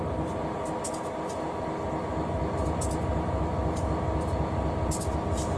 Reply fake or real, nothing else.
real